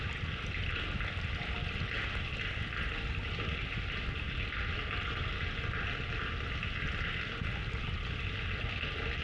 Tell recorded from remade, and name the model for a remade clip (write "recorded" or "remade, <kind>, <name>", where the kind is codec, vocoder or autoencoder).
recorded